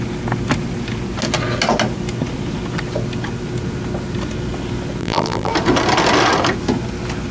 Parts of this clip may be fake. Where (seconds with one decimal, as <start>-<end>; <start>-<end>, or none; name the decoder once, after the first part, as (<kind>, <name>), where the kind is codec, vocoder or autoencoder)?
5.0-5.5 (vocoder, BigVGAN v2)